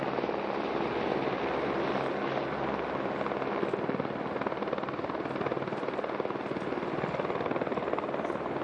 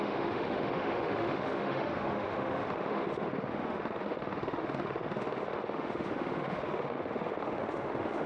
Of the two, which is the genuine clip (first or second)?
first